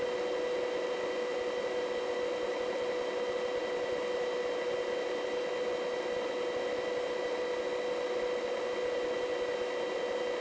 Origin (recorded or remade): recorded